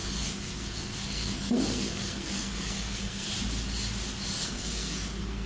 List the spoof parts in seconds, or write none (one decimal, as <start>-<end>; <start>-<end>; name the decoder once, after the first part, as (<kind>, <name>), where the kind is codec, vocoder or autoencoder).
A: 0.0-3.3 (codec, SNAC); 4.4-5.5